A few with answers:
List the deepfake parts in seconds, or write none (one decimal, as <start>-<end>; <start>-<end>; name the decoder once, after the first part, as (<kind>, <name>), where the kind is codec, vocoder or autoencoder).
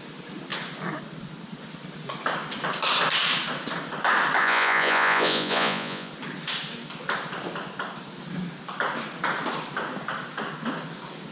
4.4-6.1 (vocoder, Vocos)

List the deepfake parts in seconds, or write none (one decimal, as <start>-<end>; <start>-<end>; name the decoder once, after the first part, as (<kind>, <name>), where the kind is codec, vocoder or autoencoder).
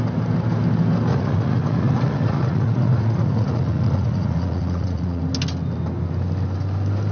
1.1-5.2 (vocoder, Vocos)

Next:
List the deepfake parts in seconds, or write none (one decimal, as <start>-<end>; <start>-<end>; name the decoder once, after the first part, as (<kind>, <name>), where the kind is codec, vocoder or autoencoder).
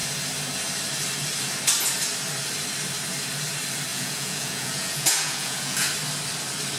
3.9-5.9 (vocoder, Vocos)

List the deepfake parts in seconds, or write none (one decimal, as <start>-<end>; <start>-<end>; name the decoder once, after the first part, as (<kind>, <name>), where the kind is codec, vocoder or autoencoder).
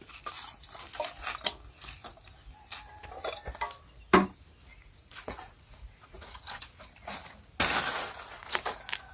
4.7-6.6 (vocoder, Vocos); 7.9-8.5